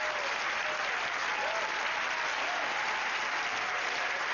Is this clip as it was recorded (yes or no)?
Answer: yes